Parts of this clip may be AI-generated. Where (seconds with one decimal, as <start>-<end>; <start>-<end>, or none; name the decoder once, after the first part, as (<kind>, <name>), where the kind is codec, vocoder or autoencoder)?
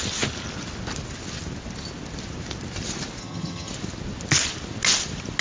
3.2-3.7 (vocoder, HiFi-GAN)